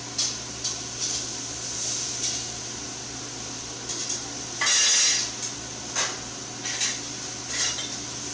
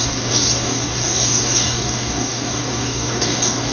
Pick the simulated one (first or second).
second